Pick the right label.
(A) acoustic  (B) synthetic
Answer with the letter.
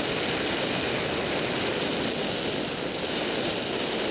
A